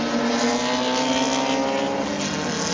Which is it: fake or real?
real